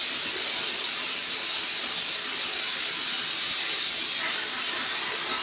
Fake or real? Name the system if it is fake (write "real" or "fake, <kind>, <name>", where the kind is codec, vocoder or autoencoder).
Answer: real